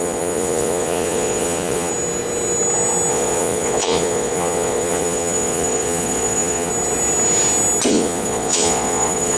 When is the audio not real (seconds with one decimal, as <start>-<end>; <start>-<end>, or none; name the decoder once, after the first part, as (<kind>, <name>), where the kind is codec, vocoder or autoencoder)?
0.0-1.9 (vocoder, Vocos); 3.1-6.7; 7.9-9.4